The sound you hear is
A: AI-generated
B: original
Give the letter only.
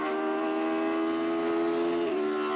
B